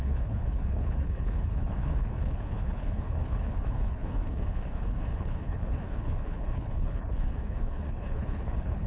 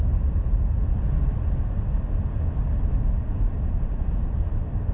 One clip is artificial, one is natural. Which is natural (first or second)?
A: second